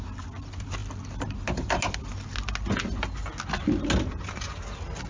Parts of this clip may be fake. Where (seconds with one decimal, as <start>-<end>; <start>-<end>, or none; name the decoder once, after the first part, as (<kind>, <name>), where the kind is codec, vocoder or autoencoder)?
none